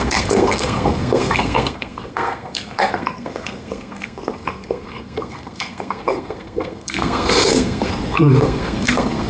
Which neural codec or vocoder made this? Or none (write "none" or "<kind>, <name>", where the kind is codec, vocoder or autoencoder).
codec, SNAC